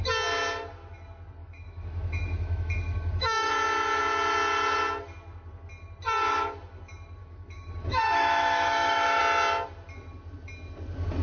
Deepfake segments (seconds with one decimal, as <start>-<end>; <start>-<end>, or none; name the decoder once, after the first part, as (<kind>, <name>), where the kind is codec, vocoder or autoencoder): 1.4-3.5 (autoencoder, DAC-VAE); 7.2-9.2